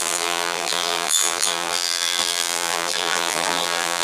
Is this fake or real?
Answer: fake